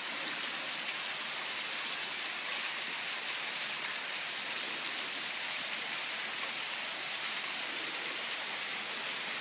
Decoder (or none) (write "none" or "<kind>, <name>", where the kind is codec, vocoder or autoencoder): none